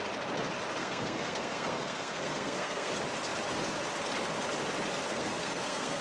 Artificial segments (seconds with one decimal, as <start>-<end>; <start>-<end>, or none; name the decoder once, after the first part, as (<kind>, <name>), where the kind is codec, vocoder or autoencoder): 0.8-2.9 (codec, SNAC); 5.1-6.0